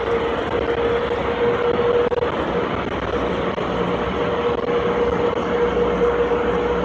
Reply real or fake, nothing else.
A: real